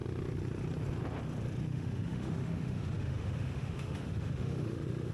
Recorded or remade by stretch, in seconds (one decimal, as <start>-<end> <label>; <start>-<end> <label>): 0.0-1.7 recorded; 1.7-5.1 remade